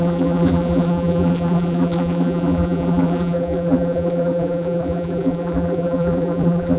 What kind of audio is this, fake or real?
fake